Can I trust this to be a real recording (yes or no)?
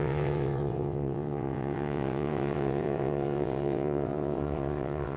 no